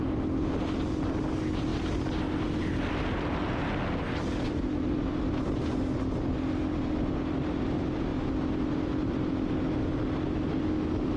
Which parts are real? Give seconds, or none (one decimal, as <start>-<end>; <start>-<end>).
0.0-11.2

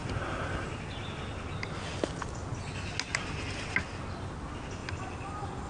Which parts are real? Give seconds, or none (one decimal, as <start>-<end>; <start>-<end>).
0.0-4.8

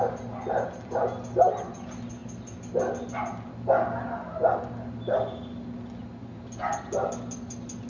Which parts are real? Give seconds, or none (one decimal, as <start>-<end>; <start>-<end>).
0.0-7.9

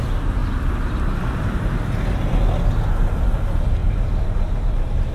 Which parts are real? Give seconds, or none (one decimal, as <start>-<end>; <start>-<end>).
0.0-3.8

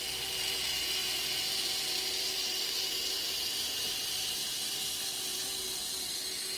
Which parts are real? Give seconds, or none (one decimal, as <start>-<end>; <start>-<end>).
0.0-1.0; 1.7-6.6

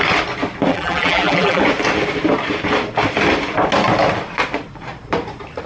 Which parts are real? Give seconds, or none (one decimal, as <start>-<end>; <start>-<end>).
0.0-0.7; 1.6-5.7

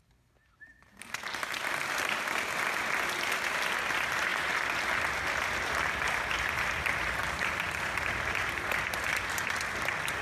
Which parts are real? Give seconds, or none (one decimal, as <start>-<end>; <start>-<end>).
0.0-7.2; 7.7-10.2

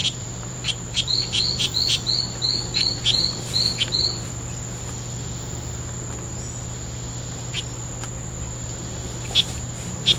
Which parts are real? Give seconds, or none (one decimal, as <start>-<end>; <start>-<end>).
4.3-10.2